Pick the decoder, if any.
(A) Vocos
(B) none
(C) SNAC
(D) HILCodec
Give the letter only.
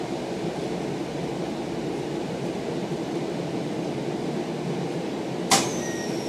B